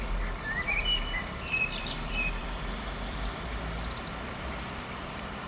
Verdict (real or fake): fake